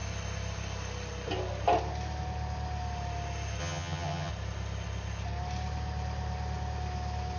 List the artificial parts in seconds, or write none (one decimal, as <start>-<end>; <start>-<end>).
3.6-4.3